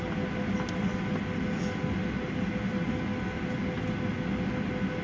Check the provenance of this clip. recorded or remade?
recorded